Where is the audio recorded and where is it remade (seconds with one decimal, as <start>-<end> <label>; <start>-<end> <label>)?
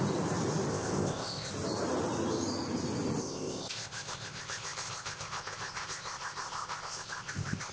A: 0.0-0.7 recorded; 0.7-1.5 remade; 1.5-3.2 recorded; 3.2-7.7 remade